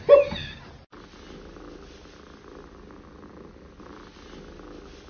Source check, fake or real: real